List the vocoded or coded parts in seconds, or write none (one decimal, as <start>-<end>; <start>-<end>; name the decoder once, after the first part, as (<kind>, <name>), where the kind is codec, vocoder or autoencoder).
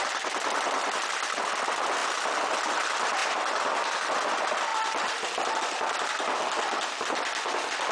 none